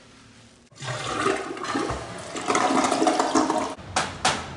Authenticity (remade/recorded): recorded